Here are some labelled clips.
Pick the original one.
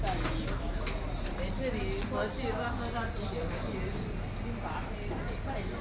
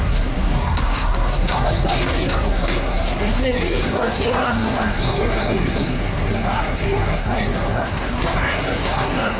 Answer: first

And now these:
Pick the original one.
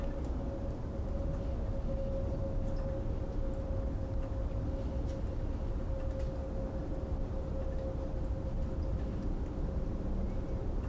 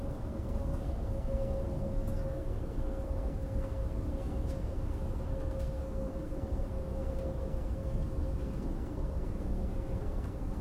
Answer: first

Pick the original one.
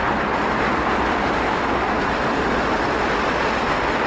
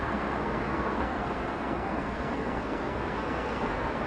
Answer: first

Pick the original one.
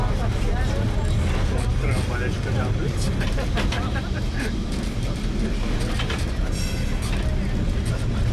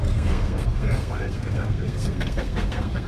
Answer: first